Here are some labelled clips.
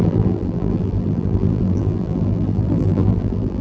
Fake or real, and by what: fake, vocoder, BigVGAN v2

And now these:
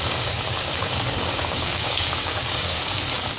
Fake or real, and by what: fake, codec, DAC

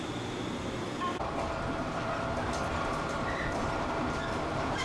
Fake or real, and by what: fake, vocoder, BigVGAN v2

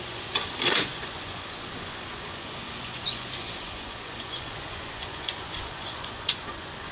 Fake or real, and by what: fake, vocoder, Vocos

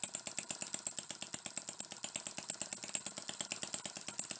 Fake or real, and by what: real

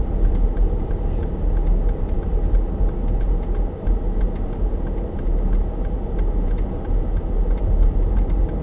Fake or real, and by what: real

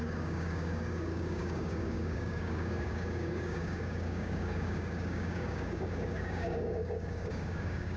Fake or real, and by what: fake, codec, DAC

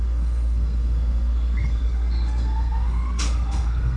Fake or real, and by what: fake, codec, SNAC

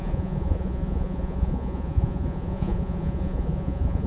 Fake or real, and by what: fake, vocoder, Vocos